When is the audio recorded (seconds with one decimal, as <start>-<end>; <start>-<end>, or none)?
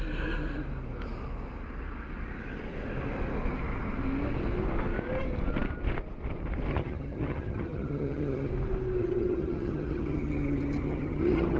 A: 0.0-6.7; 8.5-9.0